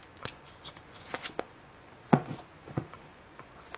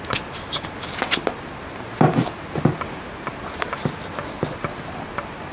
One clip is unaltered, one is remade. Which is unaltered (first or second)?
second